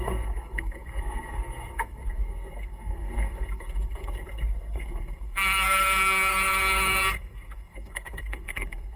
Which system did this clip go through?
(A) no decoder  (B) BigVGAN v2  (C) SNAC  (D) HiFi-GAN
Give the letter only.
C